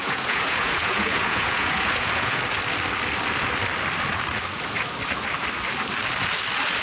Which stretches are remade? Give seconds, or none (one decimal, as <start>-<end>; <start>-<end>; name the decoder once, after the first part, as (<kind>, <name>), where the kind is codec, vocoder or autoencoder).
0.0-2.4 (vocoder, Vocos)